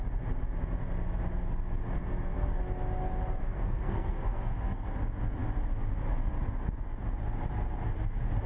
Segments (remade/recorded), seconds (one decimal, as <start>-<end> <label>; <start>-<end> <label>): 0.0-2.0 recorded; 2.0-2.6 remade; 2.6-3.4 recorded; 3.4-4.9 remade; 4.9-8.5 recorded